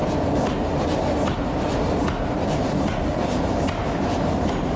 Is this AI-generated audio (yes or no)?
no